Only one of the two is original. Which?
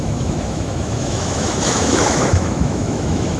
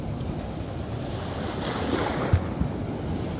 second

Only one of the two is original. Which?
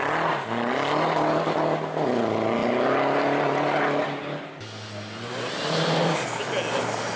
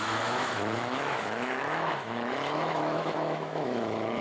first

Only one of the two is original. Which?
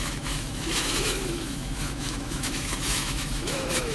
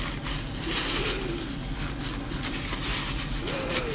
second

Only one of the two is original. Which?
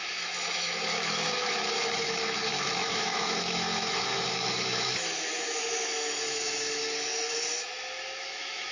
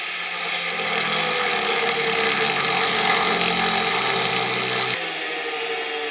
second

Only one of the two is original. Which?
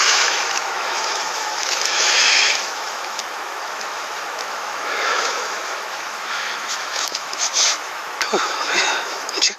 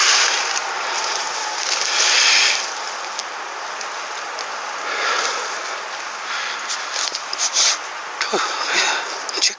second